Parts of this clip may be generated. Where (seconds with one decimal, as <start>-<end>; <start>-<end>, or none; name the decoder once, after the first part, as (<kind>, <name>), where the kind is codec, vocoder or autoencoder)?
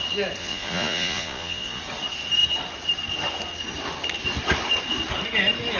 0.4-1.8 (vocoder, Vocos)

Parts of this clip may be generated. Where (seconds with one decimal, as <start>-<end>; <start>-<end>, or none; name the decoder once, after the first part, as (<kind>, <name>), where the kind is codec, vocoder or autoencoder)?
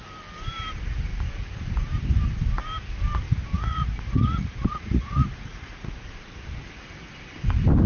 3.5-6.1 (vocoder, Vocos)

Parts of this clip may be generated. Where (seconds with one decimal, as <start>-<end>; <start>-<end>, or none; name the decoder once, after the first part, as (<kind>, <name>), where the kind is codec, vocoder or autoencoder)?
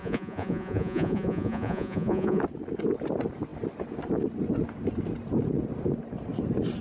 0.0-2.4 (vocoder, Vocos)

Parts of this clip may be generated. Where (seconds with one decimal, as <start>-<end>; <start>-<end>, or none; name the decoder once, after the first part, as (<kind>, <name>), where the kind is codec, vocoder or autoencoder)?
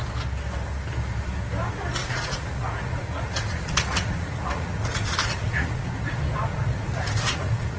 2.0-5.9 (vocoder, Vocos); 6.5-7.8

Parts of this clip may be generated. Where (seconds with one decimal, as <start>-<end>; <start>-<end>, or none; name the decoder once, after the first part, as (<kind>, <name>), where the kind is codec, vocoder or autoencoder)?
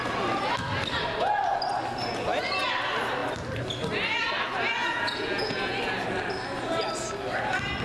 4.8-5.8 (vocoder, Vocos)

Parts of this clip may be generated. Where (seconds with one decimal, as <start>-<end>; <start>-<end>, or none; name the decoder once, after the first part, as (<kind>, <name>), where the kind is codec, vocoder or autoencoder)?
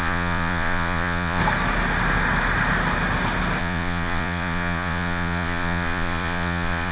0.0-1.4 (vocoder, Vocos); 3.6-6.9